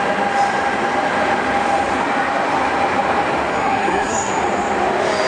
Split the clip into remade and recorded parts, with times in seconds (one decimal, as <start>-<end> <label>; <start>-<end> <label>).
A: 0.0-3.5 recorded; 3.5-4.3 remade; 4.3-5.3 recorded